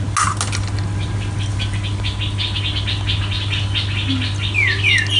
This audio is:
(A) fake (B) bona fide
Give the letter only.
B